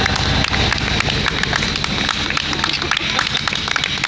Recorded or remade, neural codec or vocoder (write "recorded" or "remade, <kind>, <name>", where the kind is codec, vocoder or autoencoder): recorded